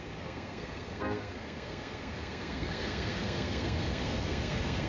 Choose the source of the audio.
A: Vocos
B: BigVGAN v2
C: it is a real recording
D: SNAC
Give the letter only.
D